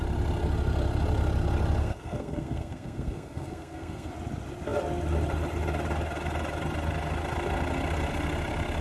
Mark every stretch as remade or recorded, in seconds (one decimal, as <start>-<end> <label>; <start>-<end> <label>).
0.0-1.8 recorded; 1.8-4.1 remade; 4.1-8.8 recorded